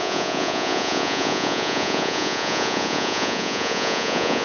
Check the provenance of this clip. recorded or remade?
remade